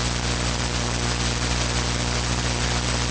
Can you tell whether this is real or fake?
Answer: real